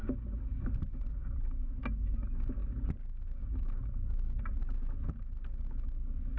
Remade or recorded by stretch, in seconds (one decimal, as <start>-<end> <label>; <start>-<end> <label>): 0.0-6.4 recorded